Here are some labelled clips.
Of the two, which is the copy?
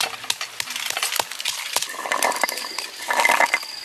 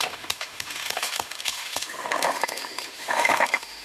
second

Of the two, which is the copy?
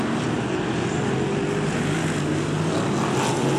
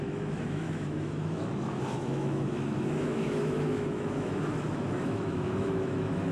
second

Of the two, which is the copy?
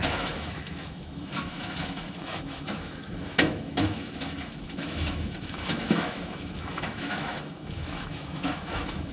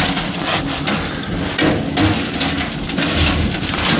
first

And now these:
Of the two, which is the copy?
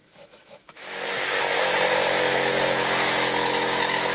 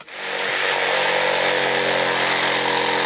first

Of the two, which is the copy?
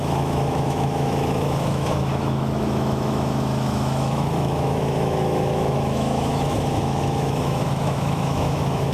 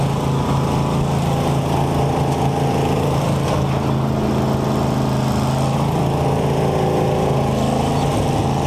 first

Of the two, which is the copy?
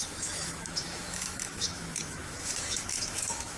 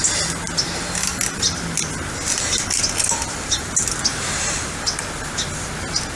first